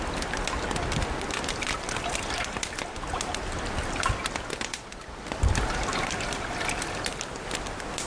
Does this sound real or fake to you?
real